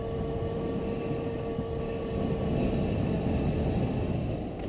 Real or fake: real